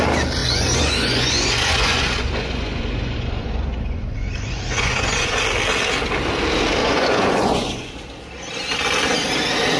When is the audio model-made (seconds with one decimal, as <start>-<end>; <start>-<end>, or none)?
0.4-5.4; 6.8-7.9